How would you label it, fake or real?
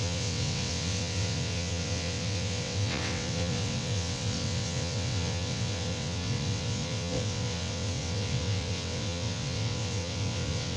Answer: fake